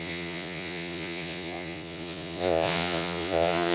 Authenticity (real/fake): fake